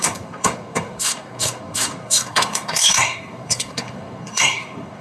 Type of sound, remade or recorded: remade